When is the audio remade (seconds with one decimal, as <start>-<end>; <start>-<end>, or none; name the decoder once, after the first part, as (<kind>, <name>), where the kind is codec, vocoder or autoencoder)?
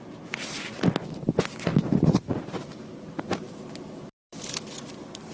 1.7-5.3 (vocoder, BigVGAN v2)